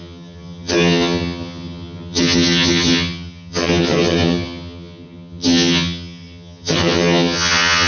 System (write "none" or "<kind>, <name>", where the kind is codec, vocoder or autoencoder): vocoder, HiFi-GAN